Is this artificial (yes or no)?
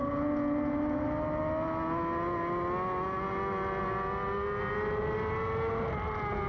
no